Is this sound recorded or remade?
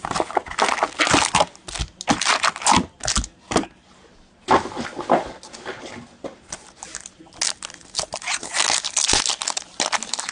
recorded